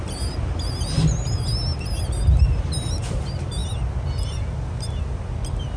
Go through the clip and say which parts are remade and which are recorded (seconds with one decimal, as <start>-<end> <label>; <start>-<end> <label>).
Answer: 0.0-5.8 recorded